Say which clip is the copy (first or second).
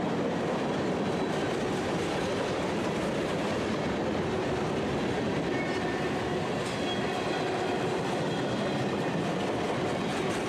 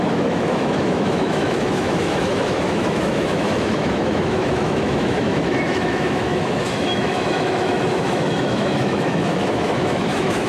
second